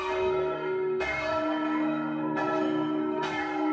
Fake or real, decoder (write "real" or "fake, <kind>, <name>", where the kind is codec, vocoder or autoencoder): fake, codec, SNAC